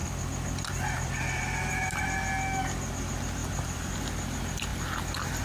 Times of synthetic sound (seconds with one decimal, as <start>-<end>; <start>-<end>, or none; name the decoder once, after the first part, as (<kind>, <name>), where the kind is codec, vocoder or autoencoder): 0.0-2.0 (vocoder, BigVGAN v2); 3.4-3.9